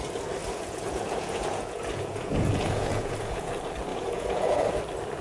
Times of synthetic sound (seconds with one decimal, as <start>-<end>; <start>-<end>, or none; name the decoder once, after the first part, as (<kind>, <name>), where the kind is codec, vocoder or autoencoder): 0.4-3.5 (vocoder, Vocos); 3.9-4.8